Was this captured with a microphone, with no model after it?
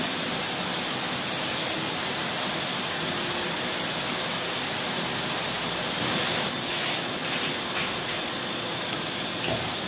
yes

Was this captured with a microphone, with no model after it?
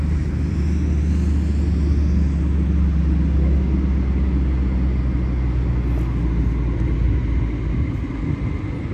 yes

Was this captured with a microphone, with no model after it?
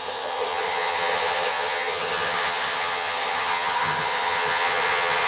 no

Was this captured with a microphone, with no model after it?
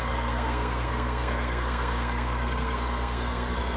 no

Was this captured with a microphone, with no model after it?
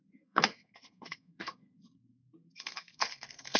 no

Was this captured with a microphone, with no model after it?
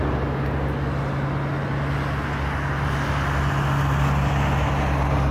yes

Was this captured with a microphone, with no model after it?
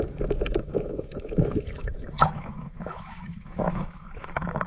no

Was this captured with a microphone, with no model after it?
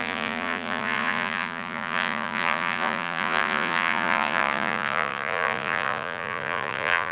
no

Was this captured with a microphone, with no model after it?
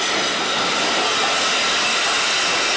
yes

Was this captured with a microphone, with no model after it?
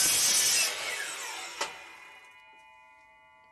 yes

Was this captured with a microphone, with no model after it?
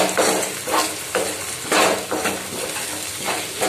yes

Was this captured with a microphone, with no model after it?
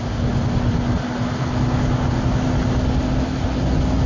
yes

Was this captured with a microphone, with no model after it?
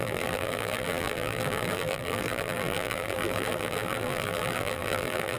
no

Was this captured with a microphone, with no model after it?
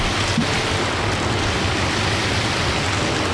yes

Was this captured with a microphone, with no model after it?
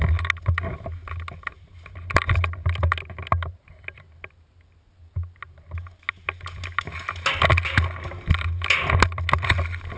yes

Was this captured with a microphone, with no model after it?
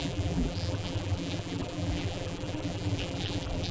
no